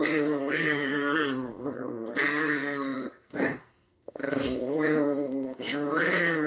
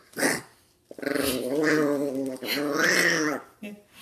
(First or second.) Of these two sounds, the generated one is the first